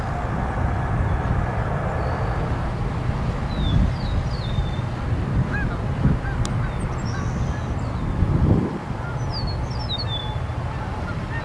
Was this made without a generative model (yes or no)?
yes